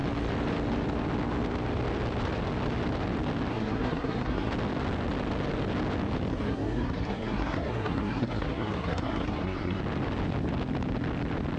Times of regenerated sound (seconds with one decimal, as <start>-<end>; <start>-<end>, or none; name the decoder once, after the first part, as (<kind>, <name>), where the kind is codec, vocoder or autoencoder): 3.5-4.5 (codec, SNAC); 6.3-9.8